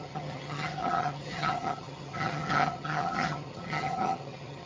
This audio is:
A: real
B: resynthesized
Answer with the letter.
B